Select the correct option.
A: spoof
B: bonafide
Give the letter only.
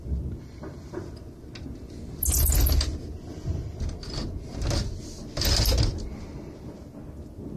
B